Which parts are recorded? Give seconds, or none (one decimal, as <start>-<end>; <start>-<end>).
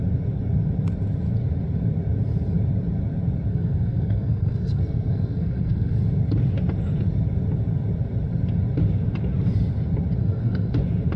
0.0-3.5; 6.0-10.2; 10.7-11.2